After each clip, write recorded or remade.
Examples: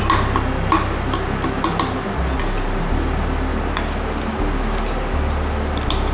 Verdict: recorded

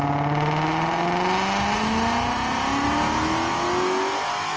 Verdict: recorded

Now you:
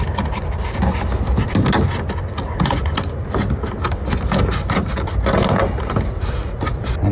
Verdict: recorded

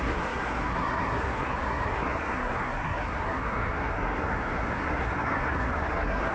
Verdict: remade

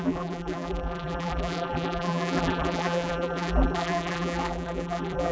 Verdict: remade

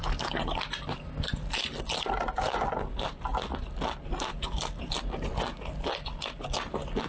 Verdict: recorded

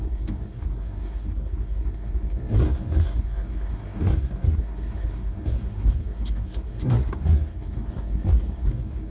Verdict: remade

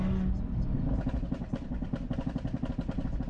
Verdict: recorded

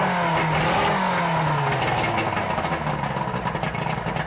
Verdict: recorded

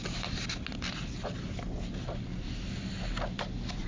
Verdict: recorded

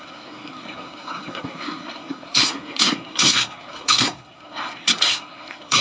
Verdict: remade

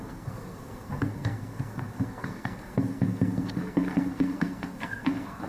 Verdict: remade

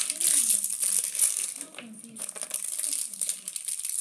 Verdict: recorded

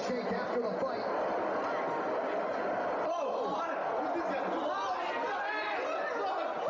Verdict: recorded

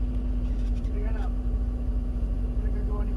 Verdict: remade